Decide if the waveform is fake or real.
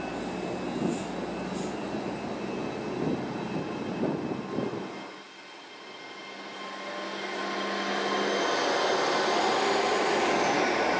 real